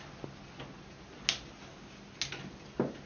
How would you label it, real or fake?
real